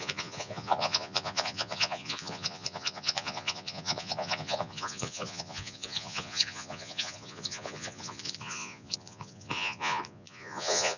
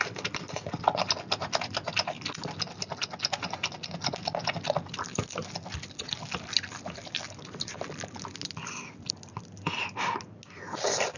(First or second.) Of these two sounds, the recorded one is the second